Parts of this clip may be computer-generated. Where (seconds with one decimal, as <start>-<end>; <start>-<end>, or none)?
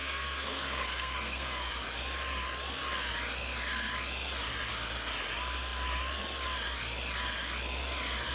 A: 0.0-1.7